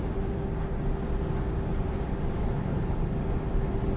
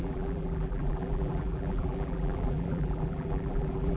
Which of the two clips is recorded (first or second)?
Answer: first